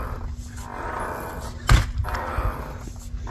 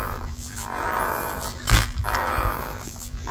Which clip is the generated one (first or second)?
second